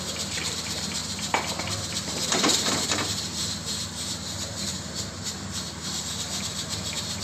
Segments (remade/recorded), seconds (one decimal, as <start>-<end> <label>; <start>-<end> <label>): 0.0-1.0 remade; 1.0-1.6 recorded; 1.6-7.2 remade